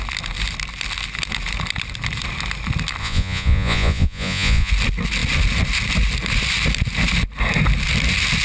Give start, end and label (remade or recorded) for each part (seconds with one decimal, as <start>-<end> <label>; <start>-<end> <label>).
0.0-3.0 recorded; 3.0-4.7 remade; 4.7-8.4 recorded